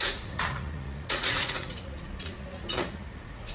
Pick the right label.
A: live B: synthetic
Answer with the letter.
B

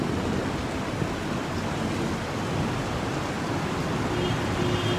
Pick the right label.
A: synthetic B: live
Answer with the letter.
B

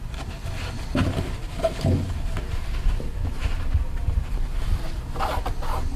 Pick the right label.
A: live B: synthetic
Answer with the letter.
A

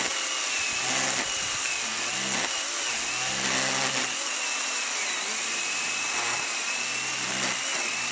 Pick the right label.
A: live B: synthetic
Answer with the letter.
A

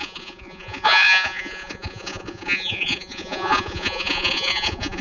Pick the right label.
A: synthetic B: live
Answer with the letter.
A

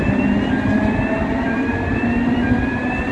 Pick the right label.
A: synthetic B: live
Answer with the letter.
B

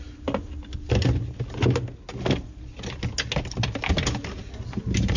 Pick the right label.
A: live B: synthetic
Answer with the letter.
A